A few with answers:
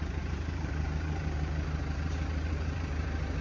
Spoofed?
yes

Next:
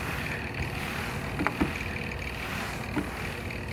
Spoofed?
no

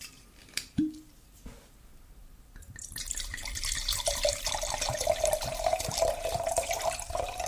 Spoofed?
yes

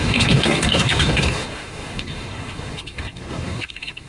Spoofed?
yes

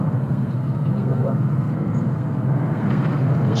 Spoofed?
yes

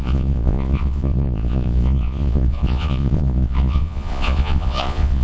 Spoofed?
yes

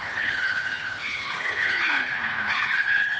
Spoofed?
yes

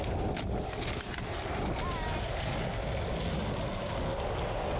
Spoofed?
no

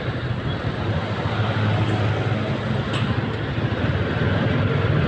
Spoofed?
no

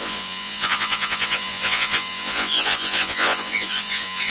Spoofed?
yes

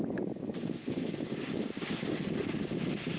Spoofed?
no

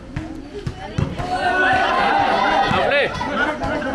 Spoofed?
no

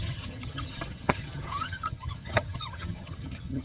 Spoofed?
yes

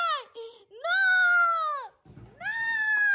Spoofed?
no